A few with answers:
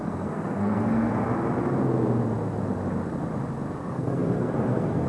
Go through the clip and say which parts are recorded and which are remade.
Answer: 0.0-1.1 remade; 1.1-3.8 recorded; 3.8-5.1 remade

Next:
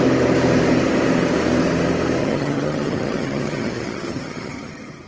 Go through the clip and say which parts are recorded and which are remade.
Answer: 0.0-2.2 recorded; 2.2-5.1 remade

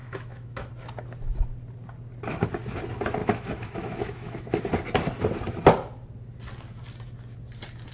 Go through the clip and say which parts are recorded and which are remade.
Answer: 0.0-0.7 remade; 0.7-3.2 recorded; 3.2-4.6 remade; 4.6-7.9 recorded

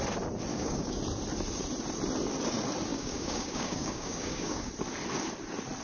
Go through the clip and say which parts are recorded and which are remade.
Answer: 0.0-0.5 recorded; 0.5-1.0 remade; 1.0-2.9 recorded; 2.9-4.7 remade; 4.7-5.8 recorded

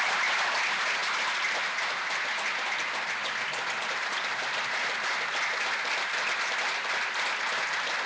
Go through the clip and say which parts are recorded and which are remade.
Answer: 0.0-8.1 recorded

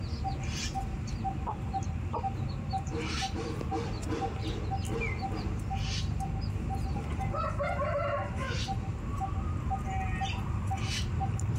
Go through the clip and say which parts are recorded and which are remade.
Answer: 0.0-2.0 recorded; 2.0-3.7 remade; 3.7-9.1 recorded; 9.1-9.7 remade; 9.7-11.6 recorded

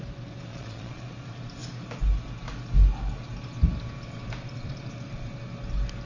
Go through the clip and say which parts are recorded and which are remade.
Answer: 0.0-0.5 recorded; 0.5-1.0 remade; 1.0-6.1 recorded